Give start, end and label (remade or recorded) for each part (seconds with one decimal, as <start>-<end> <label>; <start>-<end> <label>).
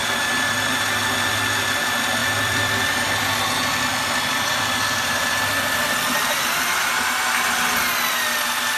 0.0-2.2 recorded; 2.2-3.0 remade; 3.0-3.9 recorded; 3.9-6.9 remade; 6.9-8.8 recorded